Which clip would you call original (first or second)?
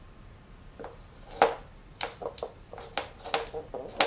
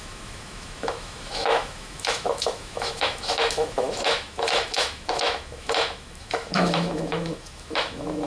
first